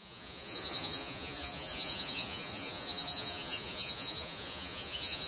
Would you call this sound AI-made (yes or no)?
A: yes